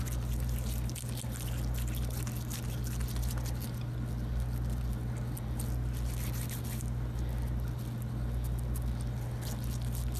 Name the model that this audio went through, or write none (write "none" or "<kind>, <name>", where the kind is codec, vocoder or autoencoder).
none